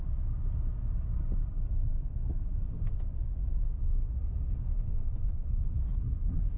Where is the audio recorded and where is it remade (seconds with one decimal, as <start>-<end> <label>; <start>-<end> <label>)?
0.0-5.8 recorded; 5.8-6.6 remade